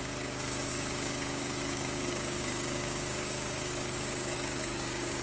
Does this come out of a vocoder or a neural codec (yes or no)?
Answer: yes